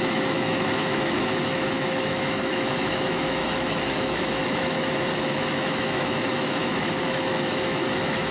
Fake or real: fake